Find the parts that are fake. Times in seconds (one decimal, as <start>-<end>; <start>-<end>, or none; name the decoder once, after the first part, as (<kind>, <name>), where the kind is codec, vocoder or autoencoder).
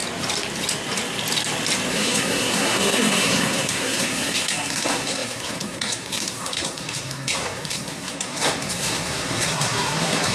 1.9-10.3 (codec, SNAC)